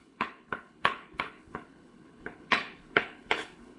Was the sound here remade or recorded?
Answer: remade